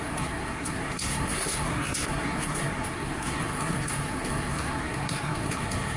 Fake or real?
fake